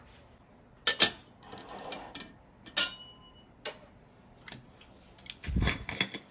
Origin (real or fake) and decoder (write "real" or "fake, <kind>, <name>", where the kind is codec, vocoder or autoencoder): real